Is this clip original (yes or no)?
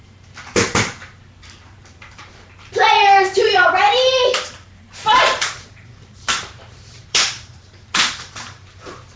no